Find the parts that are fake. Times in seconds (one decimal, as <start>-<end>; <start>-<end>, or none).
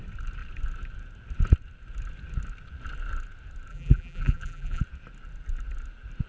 3.7-4.8